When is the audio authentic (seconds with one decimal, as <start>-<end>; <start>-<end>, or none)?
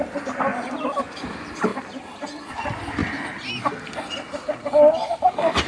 1.7-2.5; 3.0-5.7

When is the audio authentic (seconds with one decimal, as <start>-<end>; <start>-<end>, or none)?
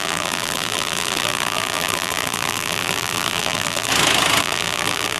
3.9-4.4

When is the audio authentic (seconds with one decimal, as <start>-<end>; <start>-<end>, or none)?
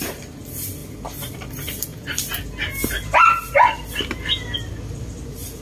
0.8-1.3; 1.9-5.6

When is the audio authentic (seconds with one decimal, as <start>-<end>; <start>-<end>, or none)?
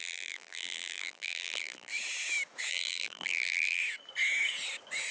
1.9-2.7; 3.8-5.1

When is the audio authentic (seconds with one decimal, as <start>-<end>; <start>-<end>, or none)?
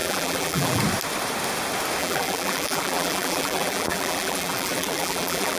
0.8-2.0